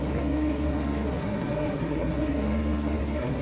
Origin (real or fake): fake